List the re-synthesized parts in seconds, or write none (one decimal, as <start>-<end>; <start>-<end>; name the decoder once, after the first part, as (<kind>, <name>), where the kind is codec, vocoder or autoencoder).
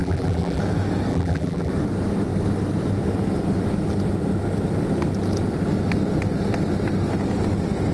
0.0-0.6 (vocoder, BigVGAN v2); 1.1-1.7